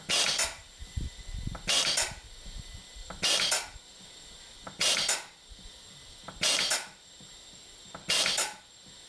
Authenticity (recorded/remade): recorded